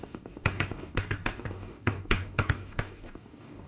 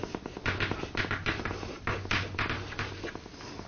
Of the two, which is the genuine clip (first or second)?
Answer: second